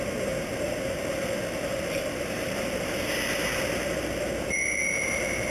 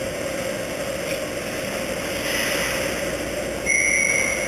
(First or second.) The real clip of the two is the second